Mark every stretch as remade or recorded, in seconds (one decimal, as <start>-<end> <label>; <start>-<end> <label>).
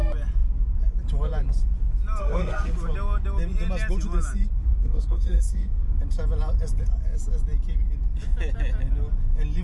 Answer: 0.0-2.2 recorded; 2.2-2.7 remade; 2.7-4.7 recorded; 4.7-6.0 remade; 6.0-9.6 recorded